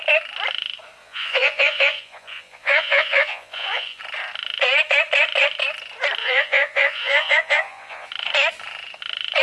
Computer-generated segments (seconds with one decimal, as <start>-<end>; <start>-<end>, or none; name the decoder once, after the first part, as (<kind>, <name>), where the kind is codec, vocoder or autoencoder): 1.0-4.0 (vocoder, Vocos); 6.2-8.1